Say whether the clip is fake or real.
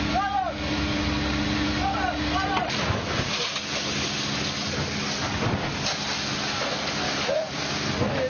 real